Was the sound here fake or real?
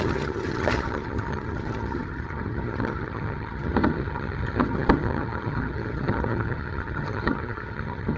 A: fake